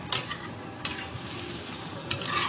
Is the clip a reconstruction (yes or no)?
no